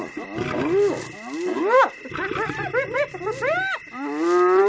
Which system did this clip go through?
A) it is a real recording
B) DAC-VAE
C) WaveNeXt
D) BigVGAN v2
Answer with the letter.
A